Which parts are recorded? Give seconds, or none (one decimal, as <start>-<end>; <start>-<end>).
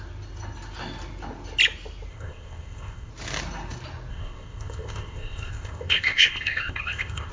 0.0-2.1; 3.1-4.1